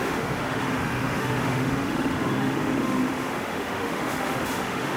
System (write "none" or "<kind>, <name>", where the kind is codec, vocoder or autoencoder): autoencoder, DAC-VAE